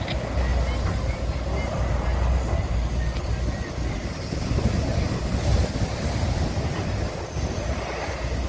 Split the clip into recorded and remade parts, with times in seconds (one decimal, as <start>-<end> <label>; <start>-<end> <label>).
0.0-8.5 recorded